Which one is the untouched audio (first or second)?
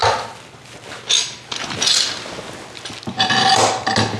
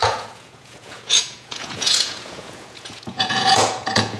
first